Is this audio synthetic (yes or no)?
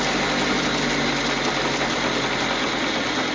no